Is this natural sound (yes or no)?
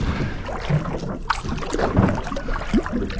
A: yes